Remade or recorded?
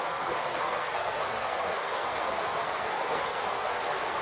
remade